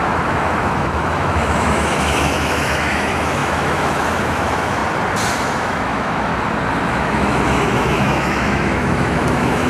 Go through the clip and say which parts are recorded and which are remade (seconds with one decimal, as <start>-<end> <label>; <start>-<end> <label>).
0.0-4.8 remade; 4.8-5.3 recorded; 5.3-6.3 remade; 6.3-6.9 recorded; 6.9-9.7 remade